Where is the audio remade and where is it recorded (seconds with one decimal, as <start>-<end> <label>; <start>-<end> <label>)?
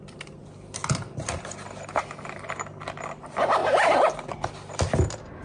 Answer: 0.0-3.6 recorded; 3.6-4.1 remade; 4.1-5.4 recorded